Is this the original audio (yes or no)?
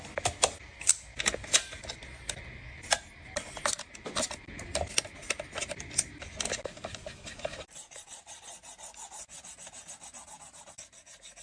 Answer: yes